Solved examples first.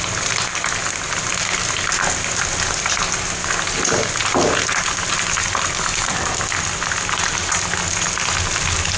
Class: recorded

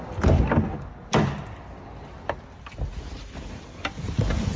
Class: recorded